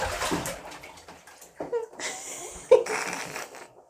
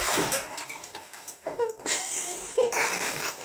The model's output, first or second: second